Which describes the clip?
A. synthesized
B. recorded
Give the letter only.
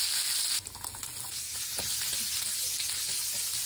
B